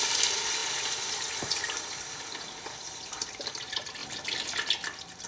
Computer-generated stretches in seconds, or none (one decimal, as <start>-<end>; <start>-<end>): 0.6-2.2; 2.8-3.6